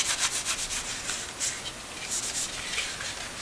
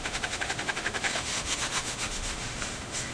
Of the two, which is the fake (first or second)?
second